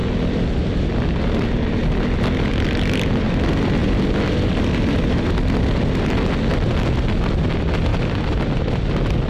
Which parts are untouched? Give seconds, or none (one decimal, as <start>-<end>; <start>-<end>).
0.0-9.3